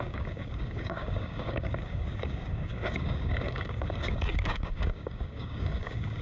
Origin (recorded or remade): remade